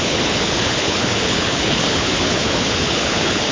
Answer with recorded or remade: remade